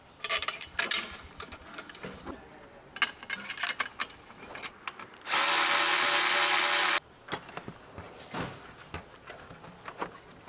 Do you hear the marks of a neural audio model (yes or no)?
no